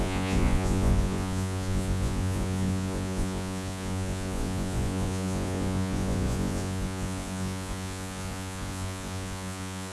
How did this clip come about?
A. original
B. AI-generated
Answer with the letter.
B